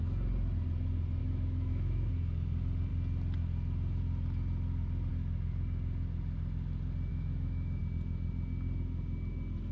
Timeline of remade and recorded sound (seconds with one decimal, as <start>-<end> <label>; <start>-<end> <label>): 0.0-1.2 recorded; 1.2-2.1 remade; 2.1-7.1 recorded; 7.1-7.8 remade; 7.8-9.7 recorded